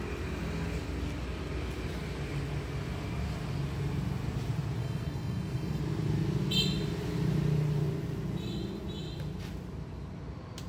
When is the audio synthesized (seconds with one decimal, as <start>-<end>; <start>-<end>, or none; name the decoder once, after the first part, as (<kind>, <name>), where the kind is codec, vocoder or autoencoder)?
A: 4.8-5.8 (codec, SNAC)